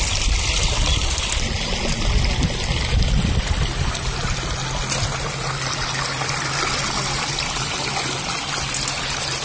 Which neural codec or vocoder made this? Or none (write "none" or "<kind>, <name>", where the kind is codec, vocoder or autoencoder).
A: none